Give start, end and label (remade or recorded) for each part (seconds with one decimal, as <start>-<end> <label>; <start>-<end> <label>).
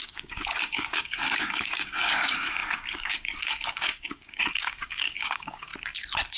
0.0-5.7 remade; 5.7-6.4 recorded